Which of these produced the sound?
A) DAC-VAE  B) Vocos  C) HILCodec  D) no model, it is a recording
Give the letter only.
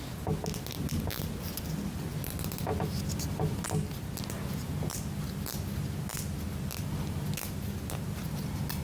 D